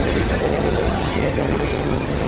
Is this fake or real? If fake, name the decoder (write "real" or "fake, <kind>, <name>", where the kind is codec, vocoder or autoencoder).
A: fake, vocoder, HiFi-GAN